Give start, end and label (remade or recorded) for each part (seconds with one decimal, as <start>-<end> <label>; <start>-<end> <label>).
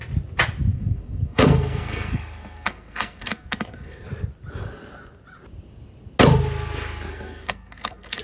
0.0-0.7 recorded; 0.7-4.1 remade; 4.1-7.1 recorded; 7.1-8.2 remade